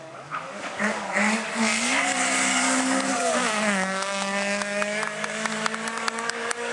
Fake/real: fake